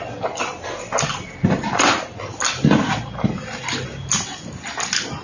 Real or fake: real